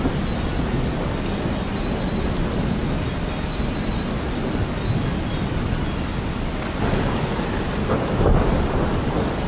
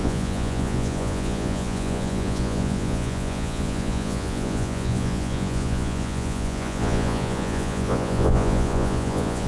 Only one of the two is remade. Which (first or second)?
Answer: second